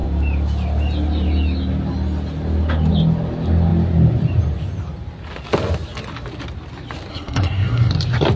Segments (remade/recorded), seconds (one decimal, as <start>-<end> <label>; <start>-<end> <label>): 0.0-7.1 recorded; 7.1-7.9 remade; 7.9-8.4 recorded